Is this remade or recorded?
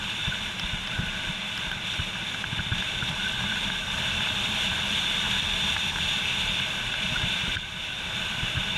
recorded